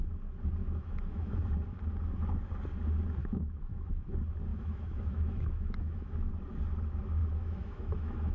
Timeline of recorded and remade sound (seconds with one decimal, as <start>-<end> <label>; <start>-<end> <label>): 0.0-0.6 recorded; 0.6-1.5 remade; 1.5-3.2 recorded; 3.2-3.9 remade; 3.9-4.5 recorded; 4.5-6.3 remade; 6.3-7.2 recorded; 7.2-8.3 remade